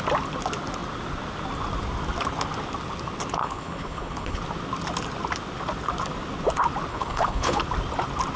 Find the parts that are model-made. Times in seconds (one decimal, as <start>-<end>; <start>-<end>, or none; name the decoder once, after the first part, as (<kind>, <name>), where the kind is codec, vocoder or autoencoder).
3.4-4.4 (codec, HILCodec); 6.9-7.6